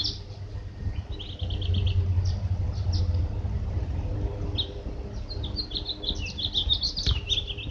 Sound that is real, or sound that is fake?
real